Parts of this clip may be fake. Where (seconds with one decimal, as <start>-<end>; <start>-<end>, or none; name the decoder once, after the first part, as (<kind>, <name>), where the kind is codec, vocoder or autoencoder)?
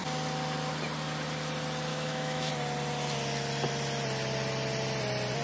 1.9-2.5 (autoencoder, DAC-VAE)